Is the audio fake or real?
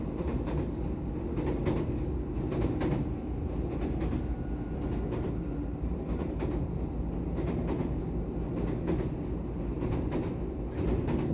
real